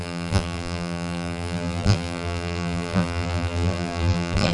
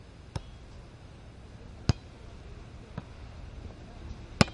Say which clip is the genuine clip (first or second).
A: second